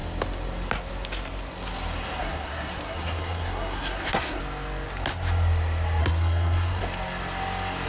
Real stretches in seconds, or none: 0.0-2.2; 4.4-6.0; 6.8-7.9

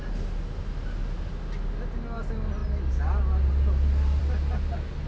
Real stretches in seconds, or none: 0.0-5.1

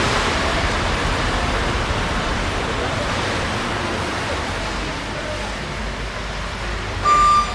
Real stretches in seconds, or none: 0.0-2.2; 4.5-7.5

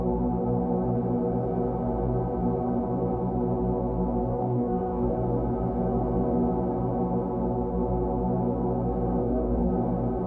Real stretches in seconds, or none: 0.0-4.3; 5.1-9.2; 9.7-10.3

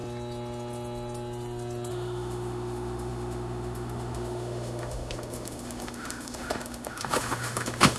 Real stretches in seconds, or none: 0.0-1.9

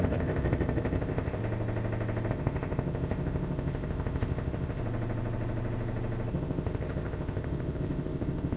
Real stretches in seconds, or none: 1.4-2.3; 4.8-6.3